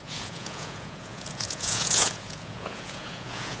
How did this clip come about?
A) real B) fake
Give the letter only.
B